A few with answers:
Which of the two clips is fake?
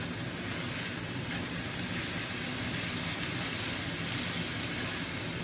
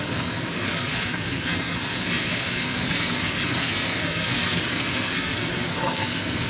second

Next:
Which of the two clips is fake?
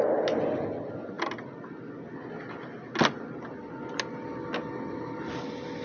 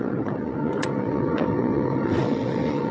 second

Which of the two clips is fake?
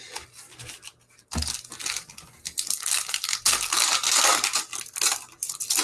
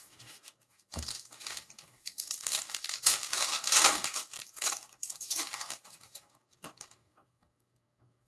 second